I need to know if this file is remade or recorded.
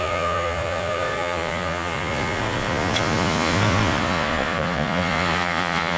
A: remade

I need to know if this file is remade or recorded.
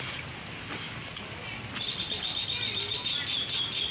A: recorded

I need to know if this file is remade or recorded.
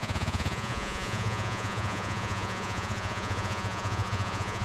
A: remade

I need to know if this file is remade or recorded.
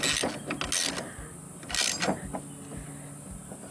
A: recorded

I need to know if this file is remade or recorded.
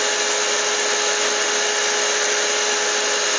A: recorded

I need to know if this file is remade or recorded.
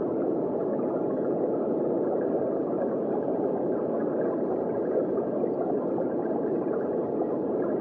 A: recorded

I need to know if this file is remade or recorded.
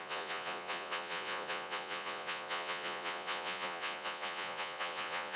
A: remade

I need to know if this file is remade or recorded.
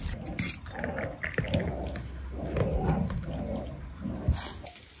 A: recorded